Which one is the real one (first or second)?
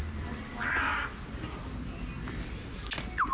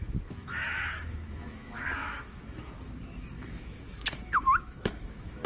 first